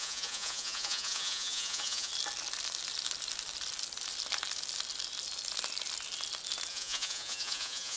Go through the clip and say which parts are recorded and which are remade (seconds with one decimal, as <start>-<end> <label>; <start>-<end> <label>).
0.0-2.1 remade; 2.1-6.7 recorded; 6.7-8.0 remade